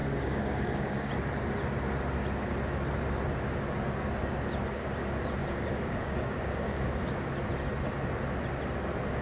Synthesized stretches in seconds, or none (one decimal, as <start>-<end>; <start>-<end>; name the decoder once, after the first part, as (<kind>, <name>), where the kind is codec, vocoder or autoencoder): 0.0-1.1 (codec, DAC); 5.4-7.3

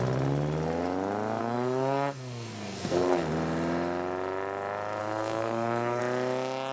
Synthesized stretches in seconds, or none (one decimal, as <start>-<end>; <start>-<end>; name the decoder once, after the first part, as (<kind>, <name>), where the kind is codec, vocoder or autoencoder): 1.4-3.3 (codec, SNAC); 5.0-6.0

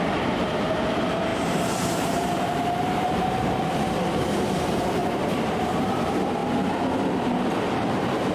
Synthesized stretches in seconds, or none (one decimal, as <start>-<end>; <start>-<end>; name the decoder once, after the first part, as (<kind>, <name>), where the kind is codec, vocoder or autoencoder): 0.0-6.4 (vocoder, BigVGAN v2); 7.5-8.3

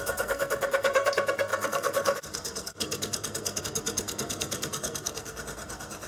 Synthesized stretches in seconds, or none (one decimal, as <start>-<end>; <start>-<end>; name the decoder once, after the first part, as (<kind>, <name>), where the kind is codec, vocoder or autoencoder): 0.0-6.1 (codec, SNAC)

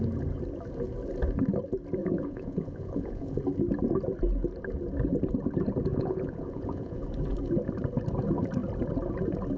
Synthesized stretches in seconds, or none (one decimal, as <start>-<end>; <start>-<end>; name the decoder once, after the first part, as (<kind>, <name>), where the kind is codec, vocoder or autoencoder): 2.0-3.4 (vocoder, Vocos); 5.9-7.0

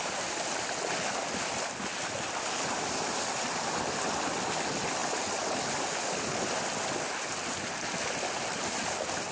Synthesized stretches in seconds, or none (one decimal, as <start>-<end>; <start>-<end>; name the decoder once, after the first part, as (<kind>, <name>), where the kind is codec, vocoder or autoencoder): none